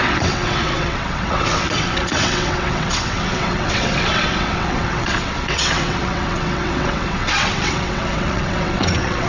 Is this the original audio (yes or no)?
no